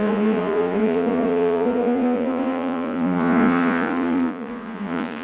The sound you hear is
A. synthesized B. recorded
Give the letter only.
A